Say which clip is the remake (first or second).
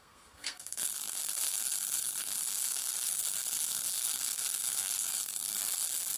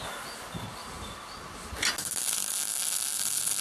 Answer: first